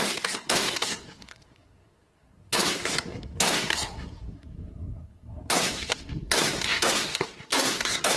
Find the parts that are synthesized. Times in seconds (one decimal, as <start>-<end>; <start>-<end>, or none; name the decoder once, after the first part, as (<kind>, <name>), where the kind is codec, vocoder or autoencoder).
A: 0.0-8.2 (codec, SNAC)